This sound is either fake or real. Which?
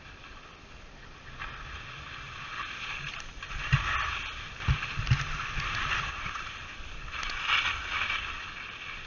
real